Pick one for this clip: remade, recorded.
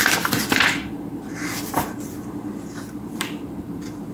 remade